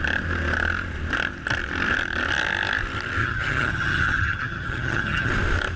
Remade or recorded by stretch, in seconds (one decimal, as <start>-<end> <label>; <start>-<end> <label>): 0.0-3.2 recorded; 3.2-5.3 remade; 5.3-5.8 recorded